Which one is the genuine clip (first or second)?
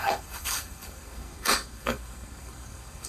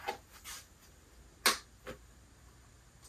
second